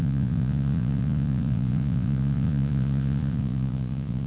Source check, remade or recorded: remade